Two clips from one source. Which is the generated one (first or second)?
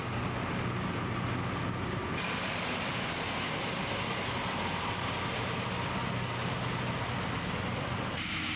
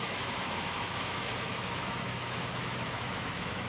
second